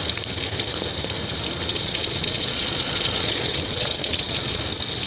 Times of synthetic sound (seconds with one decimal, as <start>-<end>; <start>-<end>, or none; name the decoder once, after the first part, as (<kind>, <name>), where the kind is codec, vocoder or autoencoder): 1.7-4.6 (vocoder, Vocos)

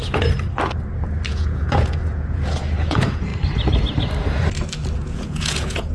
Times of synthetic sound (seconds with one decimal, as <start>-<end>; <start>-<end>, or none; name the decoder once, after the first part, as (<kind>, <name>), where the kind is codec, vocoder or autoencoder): 1.3-3.3 (vocoder, Vocos); 5.0-5.9

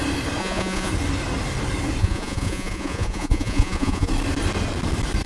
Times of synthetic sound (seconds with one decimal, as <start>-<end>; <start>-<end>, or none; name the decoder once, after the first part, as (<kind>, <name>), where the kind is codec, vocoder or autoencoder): 0.4-0.9 (vocoder, Vocos); 2.0-4.1

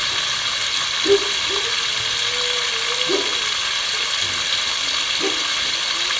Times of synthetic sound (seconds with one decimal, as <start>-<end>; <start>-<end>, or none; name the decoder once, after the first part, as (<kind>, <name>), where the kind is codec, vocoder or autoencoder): none